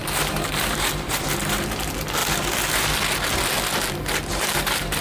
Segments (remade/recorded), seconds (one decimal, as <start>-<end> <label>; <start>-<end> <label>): 0.0-2.2 remade; 2.2-3.9 recorded; 3.9-5.0 remade